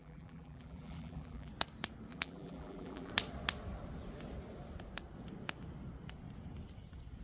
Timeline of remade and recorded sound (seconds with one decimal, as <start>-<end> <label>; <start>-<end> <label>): 0.0-1.5 remade; 1.5-2.1 recorded; 2.1-3.1 remade; 3.1-7.2 recorded